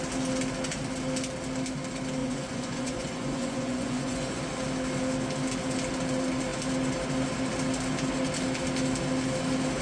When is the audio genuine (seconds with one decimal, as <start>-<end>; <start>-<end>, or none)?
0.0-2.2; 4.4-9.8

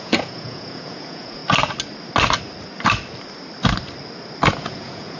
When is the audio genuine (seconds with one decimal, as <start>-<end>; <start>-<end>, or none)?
1.4-4.5

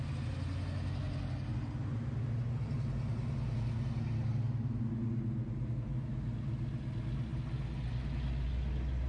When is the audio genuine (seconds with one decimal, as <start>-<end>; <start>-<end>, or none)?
0.0-9.1

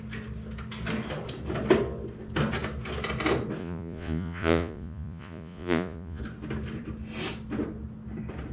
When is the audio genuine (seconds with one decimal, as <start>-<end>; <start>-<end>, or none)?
0.0-3.6; 6.2-8.5